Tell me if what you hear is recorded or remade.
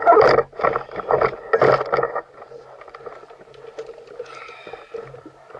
recorded